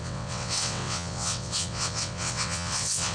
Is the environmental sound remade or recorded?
remade